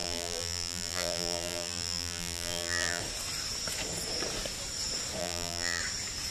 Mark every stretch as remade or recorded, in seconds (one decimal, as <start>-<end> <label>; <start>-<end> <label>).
0.0-3.0 remade; 3.0-5.2 recorded; 5.2-5.8 remade; 5.8-6.3 recorded